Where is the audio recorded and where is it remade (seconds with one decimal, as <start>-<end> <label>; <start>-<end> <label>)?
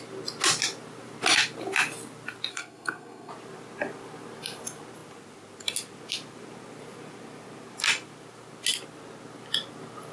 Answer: 0.0-2.5 recorded; 2.5-3.3 remade; 3.3-10.1 recorded